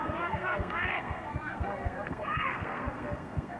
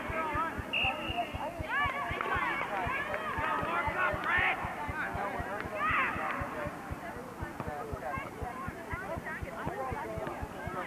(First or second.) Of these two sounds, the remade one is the first